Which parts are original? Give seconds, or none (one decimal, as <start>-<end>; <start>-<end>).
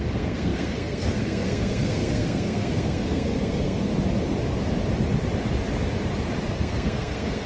3.9-6.5